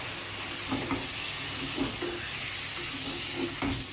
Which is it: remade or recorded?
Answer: recorded